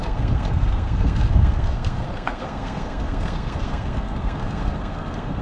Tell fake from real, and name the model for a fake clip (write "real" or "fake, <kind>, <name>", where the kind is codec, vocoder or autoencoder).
fake, codec, SNAC